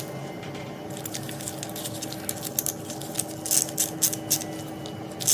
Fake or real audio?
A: real